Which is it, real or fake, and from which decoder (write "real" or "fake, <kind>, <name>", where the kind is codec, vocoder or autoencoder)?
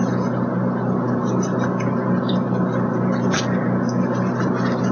real